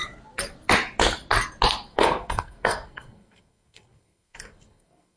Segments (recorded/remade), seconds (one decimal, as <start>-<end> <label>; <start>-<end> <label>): 0.0-1.9 recorded; 1.9-5.2 remade